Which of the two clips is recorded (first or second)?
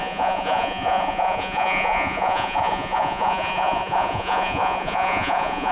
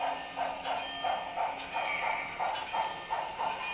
second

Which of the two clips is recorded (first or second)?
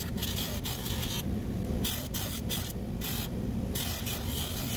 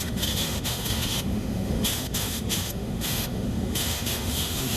first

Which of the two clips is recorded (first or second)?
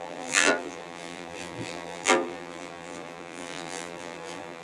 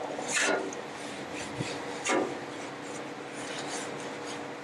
second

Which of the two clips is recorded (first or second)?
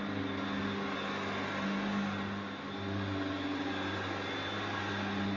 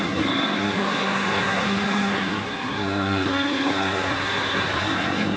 first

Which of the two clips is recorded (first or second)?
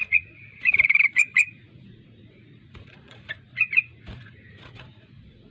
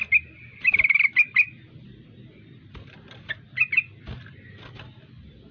second